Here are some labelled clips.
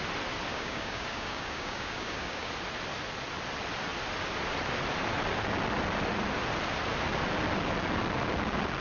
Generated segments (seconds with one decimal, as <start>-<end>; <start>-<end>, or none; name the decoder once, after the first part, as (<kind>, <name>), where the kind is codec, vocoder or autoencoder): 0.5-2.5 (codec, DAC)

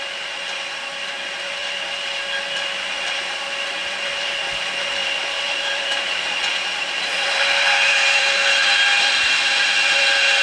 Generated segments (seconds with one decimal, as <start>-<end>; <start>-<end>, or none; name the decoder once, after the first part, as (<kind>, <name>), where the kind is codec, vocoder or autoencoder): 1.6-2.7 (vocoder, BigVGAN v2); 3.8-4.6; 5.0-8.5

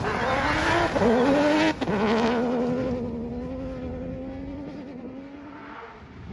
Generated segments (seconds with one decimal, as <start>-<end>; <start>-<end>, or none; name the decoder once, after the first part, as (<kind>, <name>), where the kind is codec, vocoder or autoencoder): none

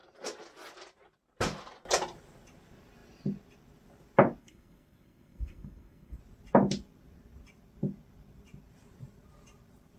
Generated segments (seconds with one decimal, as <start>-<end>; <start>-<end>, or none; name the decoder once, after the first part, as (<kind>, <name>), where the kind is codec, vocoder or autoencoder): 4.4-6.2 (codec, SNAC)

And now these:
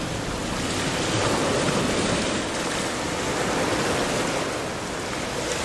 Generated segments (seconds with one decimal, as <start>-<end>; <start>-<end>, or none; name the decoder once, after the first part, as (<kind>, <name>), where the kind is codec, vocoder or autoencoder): none

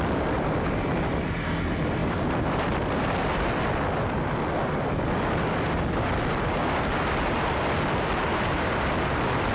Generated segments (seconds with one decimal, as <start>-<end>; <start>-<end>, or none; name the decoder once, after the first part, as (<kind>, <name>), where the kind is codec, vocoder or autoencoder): none

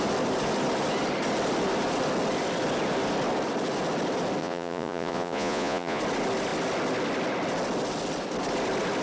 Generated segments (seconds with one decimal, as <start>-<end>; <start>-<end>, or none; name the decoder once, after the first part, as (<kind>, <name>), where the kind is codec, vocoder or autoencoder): 4.4-6.0 (vocoder, Vocos)

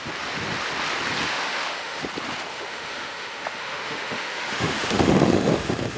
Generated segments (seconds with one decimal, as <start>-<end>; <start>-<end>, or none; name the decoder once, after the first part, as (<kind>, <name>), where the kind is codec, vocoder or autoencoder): 1.3-2.0 (autoencoder, DAC-VAE); 2.5-6.0